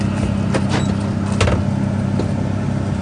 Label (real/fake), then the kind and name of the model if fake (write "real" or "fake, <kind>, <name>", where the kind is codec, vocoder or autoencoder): real